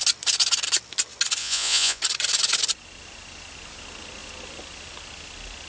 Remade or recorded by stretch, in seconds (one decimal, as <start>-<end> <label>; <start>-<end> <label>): 0.0-1.4 recorded; 1.4-2.0 remade; 2.0-5.7 recorded